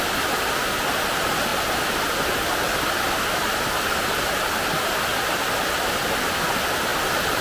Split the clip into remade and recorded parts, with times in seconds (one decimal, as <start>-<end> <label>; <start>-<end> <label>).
0.0-7.4 recorded